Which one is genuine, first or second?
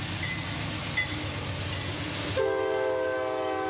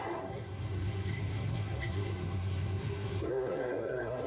first